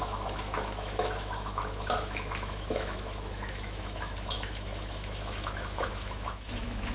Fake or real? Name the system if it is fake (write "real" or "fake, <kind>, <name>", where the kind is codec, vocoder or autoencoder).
fake, autoencoder, DAC-VAE